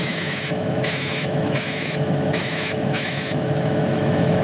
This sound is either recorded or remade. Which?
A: remade